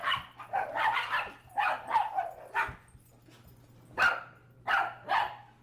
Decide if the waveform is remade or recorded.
recorded